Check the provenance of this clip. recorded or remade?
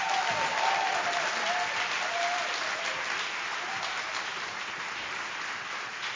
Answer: recorded